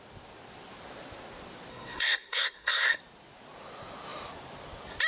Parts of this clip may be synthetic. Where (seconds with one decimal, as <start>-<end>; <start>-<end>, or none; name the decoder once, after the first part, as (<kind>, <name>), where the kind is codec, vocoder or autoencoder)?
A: 1.7-3.0 (codec, SNAC)